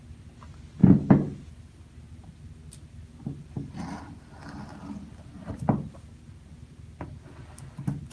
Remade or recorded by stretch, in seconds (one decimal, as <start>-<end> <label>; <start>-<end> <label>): 0.0-8.1 recorded